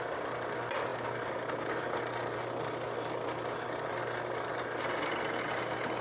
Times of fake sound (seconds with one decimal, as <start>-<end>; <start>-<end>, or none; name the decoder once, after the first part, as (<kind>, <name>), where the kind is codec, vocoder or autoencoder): none